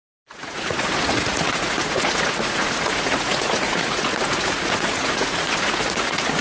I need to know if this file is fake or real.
fake